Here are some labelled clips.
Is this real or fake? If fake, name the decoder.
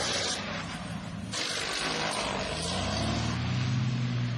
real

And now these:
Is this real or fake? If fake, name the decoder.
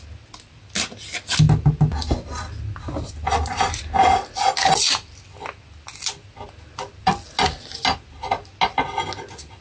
real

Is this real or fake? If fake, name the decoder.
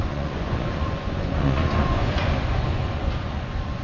fake, vocoder, Vocos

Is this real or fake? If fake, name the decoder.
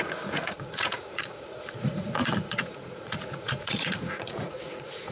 fake, vocoder, Vocos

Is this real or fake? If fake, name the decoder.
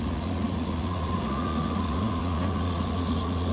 fake, vocoder, Vocos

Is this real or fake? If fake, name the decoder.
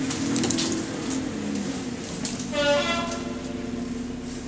real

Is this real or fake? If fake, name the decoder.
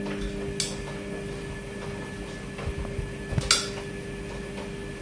real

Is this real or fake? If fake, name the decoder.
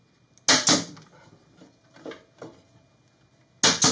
real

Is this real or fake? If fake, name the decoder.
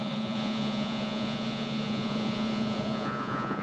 fake, vocoder, Vocos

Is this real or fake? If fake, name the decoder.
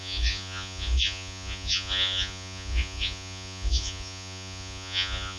fake, vocoder, Vocos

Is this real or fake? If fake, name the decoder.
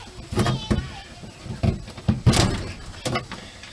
real